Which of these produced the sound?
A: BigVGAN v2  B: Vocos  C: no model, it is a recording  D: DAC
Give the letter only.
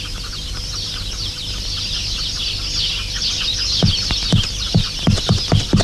C